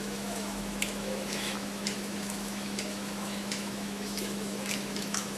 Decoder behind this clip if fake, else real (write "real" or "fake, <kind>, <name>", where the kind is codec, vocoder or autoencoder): fake, autoencoder, DAC-VAE